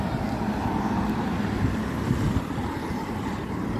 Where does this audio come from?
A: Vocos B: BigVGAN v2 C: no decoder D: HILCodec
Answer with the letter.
C